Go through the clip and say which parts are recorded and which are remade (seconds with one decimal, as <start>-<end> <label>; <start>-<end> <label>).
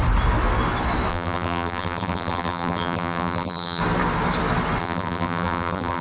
0.0-1.1 recorded; 1.1-3.8 remade; 3.8-4.8 recorded; 4.8-6.0 remade